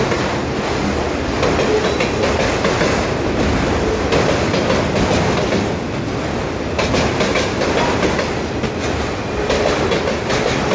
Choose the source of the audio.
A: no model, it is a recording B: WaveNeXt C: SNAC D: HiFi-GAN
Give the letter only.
A